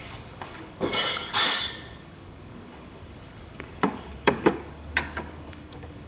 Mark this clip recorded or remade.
remade